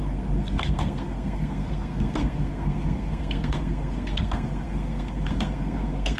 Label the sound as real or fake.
fake